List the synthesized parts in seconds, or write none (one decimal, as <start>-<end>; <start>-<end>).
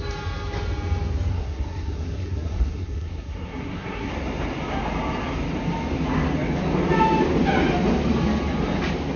1.3-4.1